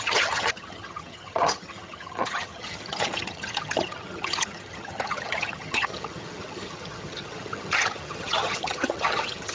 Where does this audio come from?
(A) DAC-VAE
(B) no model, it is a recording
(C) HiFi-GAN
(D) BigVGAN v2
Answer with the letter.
C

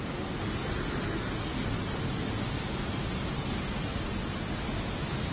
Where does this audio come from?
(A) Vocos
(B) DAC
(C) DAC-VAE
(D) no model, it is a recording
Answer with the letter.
D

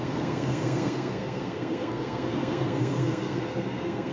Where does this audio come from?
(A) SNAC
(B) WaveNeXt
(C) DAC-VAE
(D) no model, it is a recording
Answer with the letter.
A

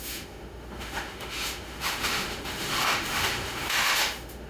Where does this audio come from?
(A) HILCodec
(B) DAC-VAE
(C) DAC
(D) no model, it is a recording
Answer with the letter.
B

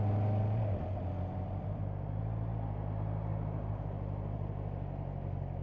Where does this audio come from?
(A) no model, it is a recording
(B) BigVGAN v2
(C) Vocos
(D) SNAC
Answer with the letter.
A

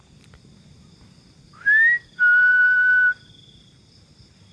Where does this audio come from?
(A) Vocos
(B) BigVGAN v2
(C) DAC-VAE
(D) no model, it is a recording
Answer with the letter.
D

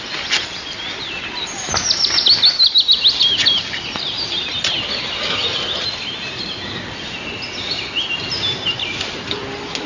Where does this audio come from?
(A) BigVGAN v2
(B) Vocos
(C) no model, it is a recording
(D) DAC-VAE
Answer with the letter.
C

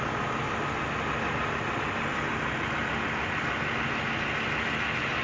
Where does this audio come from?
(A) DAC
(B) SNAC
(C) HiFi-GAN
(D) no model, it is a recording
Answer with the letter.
D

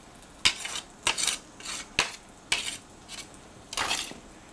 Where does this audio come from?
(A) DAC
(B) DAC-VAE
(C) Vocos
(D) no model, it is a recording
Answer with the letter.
D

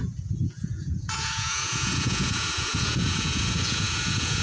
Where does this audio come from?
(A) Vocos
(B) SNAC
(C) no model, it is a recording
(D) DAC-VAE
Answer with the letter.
A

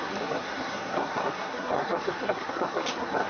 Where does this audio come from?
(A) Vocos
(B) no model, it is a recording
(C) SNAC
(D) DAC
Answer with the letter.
C